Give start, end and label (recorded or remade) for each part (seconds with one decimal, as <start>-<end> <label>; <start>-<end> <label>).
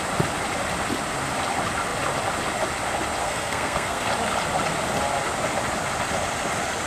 0.0-3.2 recorded; 3.2-4.1 remade; 4.1-6.9 recorded